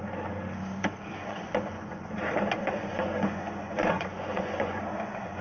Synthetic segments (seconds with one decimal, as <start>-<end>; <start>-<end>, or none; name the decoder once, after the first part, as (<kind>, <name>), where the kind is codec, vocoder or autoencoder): 1.2-2.1 (vocoder, Vocos); 2.8-4.8